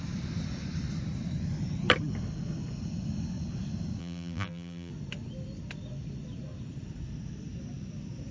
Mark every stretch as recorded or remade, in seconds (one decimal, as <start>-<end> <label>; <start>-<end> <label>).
0.0-4.0 recorded; 4.0-4.9 remade; 4.9-8.3 recorded